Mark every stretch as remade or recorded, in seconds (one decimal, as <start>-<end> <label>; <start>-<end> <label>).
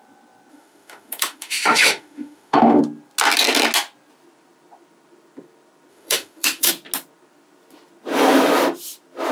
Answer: 0.0-0.5 recorded; 0.5-2.8 remade; 2.8-5.9 recorded; 5.9-6.7 remade; 6.7-9.3 recorded